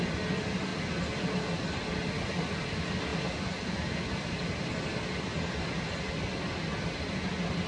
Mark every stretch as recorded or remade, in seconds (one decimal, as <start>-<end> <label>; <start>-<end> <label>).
0.0-7.7 recorded